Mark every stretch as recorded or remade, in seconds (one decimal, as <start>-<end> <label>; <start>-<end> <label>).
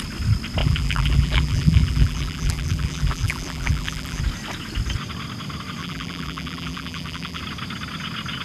0.0-0.6 recorded; 0.6-4.2 remade; 4.2-5.8 recorded; 5.8-7.4 remade; 7.4-8.4 recorded